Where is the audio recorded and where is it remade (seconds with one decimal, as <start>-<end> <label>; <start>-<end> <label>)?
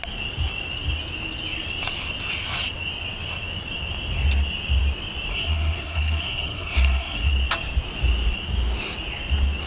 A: 0.0-5.3 recorded; 5.3-7.3 remade; 7.3-9.7 recorded